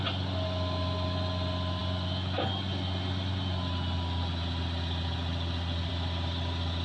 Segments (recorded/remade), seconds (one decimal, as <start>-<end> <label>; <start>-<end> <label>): 0.0-6.8 recorded